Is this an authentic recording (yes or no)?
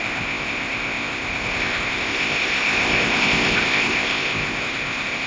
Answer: no